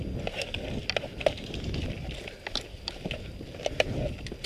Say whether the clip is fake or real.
real